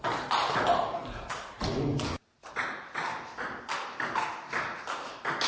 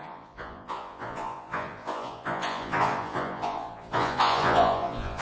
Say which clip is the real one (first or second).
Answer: first